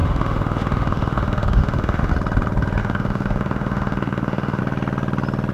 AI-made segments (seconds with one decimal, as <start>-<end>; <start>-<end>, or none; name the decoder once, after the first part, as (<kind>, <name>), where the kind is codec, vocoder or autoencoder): 0.0-2.1 (autoencoder, DAC-VAE); 2.8-4.6